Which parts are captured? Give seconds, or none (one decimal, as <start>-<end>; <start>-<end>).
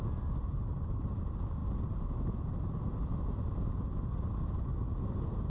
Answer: 0.0-0.6; 1.2-5.5